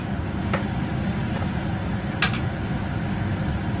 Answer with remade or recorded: recorded